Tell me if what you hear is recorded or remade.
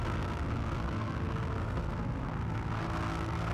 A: remade